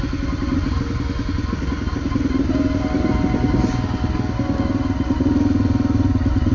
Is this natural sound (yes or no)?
yes